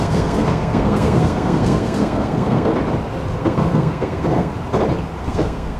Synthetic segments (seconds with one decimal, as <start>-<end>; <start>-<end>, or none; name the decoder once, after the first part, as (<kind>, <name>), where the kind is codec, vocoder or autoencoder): 0.0-2.7 (codec, SNAC); 3.4-4.5; 5.2-5.8